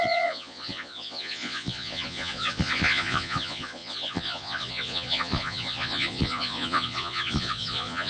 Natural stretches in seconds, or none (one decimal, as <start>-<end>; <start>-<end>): none